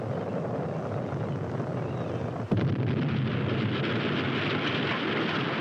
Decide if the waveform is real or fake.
real